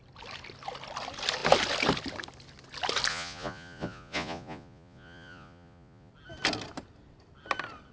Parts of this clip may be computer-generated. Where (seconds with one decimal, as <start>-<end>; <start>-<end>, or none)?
3.1-6.1